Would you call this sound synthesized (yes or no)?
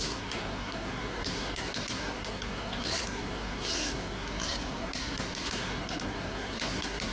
yes